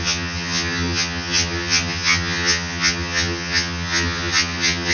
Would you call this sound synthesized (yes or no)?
yes